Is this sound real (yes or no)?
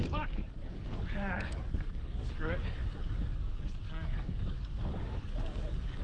no